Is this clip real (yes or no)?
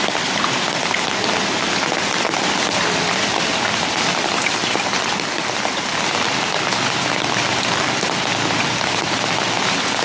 yes